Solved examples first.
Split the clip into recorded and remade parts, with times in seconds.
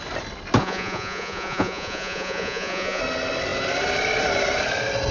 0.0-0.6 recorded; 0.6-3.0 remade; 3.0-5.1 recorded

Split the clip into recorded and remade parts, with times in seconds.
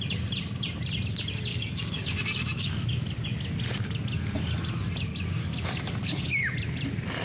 0.0-1.5 recorded; 1.5-2.7 remade; 2.7-5.4 recorded; 5.4-6.4 remade; 6.4-7.2 recorded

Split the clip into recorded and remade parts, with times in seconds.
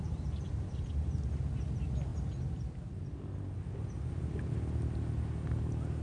0.0-6.0 recorded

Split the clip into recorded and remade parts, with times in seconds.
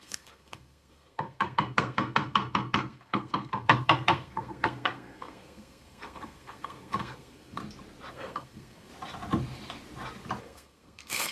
0.0-7.6 remade; 7.6-8.1 recorded; 8.1-8.9 remade; 8.9-10.4 recorded; 10.4-11.3 remade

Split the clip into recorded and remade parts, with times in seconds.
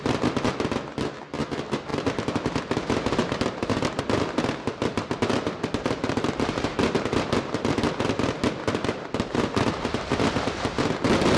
0.0-11.4 recorded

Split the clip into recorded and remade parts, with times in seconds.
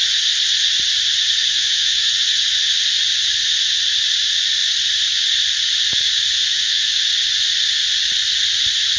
0.0-1.4 recorded; 1.4-2.1 remade; 2.1-6.4 recorded; 6.4-7.0 remade; 7.0-9.0 recorded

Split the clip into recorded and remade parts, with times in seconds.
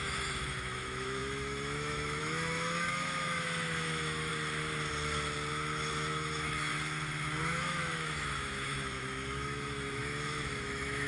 0.0-4.3 remade; 4.3-5.5 recorded; 5.5-6.7 remade; 6.7-7.4 recorded; 7.4-11.1 remade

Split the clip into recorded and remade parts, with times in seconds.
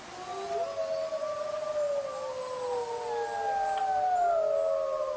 0.0-5.2 recorded